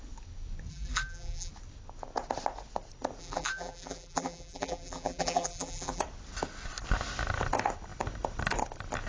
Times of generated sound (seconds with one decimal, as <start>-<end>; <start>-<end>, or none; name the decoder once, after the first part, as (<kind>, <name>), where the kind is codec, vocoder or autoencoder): 0.7-1.5 (vocoder, BigVGAN v2); 3.2-6.0